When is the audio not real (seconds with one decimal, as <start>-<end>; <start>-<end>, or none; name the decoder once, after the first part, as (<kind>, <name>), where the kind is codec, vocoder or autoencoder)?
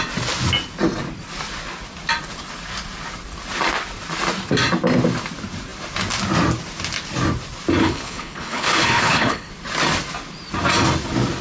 7.8-9.5 (codec, HILCodec)